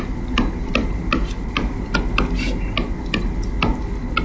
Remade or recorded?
recorded